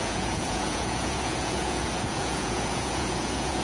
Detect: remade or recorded remade